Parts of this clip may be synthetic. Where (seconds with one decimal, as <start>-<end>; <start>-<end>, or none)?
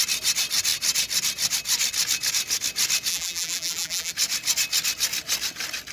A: 3.1-4.1